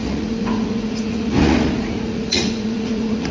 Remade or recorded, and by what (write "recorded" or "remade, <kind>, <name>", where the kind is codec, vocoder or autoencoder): remade, vocoder, Vocos